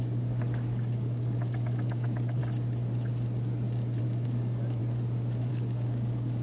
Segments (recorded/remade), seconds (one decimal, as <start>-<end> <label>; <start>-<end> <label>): 0.0-2.4 remade; 2.4-4.0 recorded; 4.0-4.8 remade; 4.8-5.5 recorded; 5.5-6.4 remade